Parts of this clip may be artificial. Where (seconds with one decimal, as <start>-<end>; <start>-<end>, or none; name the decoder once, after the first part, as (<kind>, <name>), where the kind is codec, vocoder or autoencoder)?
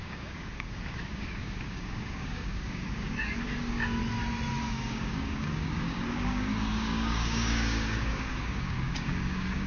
0.0-4.0 (codec, DAC); 4.6-9.7